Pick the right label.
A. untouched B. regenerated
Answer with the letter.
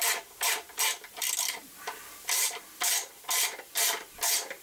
B